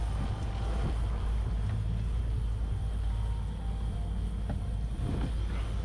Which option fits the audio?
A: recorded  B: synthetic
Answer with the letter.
A